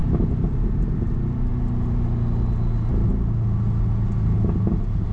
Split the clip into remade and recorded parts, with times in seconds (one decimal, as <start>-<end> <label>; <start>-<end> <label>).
0.0-5.1 recorded